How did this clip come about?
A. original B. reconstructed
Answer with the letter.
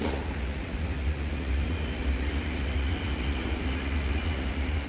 B